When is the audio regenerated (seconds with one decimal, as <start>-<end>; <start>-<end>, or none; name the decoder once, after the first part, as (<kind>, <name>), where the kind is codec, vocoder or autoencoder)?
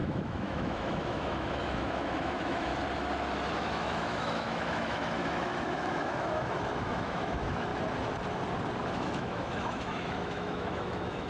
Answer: 0.0-2.7 (autoencoder, DAC-VAE); 3.5-7.7; 8.9-11.3